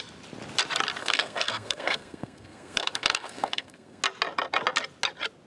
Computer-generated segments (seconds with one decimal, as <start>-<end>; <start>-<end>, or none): 1.0-4.0